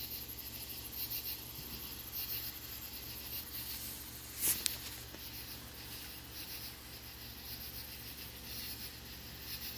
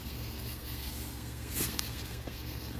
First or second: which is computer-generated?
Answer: second